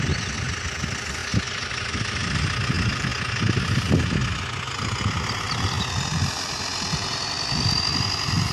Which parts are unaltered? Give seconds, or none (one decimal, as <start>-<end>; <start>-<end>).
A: 0.0-8.5